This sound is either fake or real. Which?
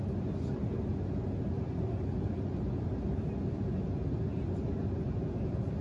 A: real